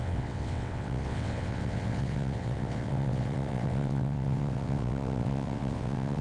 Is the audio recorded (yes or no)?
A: no